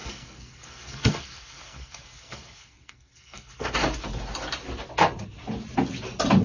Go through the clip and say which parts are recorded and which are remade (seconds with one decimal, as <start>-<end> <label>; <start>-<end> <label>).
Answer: 0.0-3.7 remade; 3.7-6.4 recorded